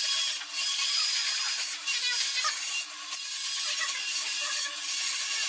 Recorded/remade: recorded